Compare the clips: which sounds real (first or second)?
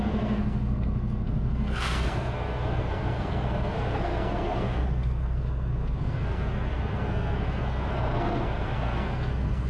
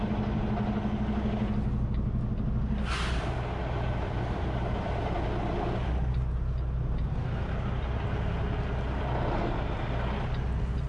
second